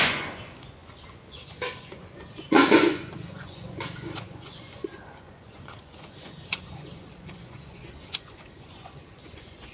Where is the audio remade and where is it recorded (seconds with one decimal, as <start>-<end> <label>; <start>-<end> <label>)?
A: 0.0-9.7 remade